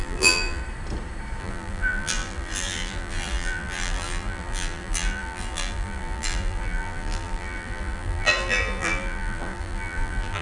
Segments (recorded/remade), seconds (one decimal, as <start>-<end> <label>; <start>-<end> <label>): 0.0-0.6 remade; 0.6-1.4 recorded; 1.4-10.4 remade